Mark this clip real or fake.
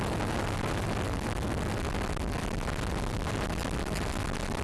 real